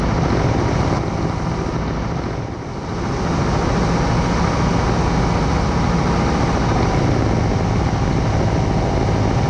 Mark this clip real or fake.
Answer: real